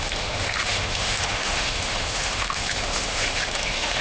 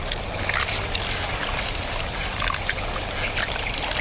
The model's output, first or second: first